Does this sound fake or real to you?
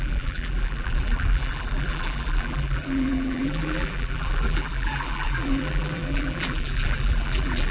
fake